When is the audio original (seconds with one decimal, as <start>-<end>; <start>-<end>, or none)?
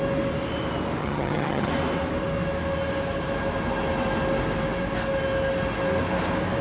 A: 0.0-1.0; 1.7-6.6